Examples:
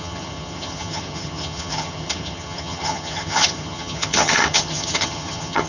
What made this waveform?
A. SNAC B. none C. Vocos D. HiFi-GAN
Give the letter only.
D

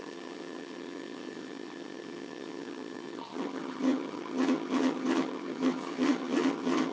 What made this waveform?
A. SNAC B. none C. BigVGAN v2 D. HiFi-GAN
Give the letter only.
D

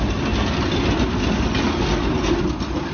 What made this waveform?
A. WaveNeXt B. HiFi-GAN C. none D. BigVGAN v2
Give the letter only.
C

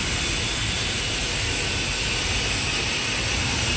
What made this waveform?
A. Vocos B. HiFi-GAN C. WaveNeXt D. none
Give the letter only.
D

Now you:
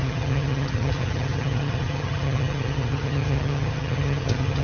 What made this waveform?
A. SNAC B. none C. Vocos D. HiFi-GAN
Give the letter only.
D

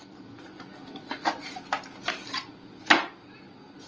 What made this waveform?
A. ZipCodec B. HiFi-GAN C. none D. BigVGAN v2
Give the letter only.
C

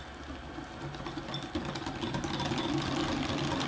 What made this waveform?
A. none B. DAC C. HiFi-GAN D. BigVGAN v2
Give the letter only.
A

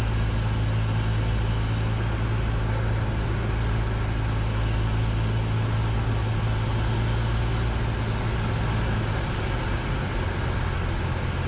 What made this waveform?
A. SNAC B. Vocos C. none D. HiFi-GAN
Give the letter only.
C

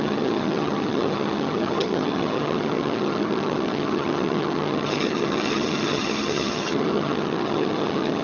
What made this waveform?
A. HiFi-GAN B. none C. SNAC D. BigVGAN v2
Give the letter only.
A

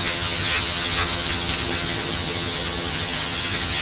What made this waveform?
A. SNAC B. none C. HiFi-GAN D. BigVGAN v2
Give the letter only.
C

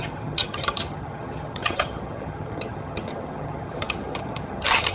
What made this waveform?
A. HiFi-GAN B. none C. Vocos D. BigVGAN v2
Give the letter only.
A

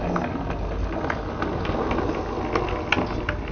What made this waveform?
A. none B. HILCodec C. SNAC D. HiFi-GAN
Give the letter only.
A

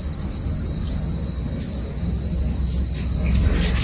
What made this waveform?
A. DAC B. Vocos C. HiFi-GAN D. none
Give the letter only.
D